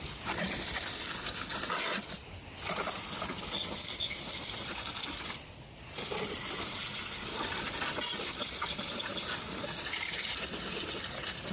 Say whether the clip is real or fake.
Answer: real